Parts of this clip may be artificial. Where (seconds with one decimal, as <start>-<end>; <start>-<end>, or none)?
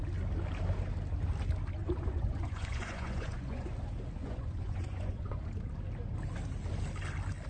1.8-3.7; 4.2-5.4